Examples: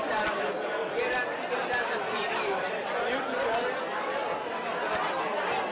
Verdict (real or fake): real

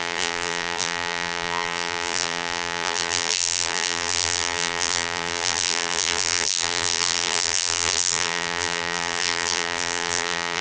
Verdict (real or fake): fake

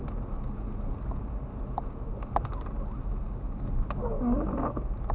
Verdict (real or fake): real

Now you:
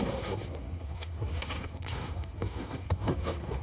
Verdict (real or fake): fake